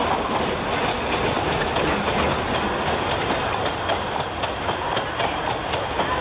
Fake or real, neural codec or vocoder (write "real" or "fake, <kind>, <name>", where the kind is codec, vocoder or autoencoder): real